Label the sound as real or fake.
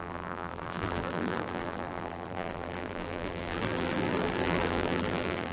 fake